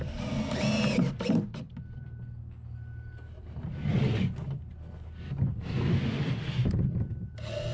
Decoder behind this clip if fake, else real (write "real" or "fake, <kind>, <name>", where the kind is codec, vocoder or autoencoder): real